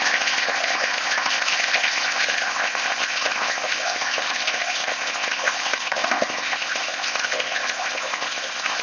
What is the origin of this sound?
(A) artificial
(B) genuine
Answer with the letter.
A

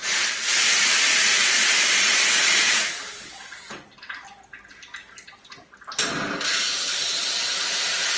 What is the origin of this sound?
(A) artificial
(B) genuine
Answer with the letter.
B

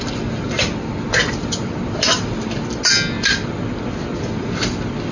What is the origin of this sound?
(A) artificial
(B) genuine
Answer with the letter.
B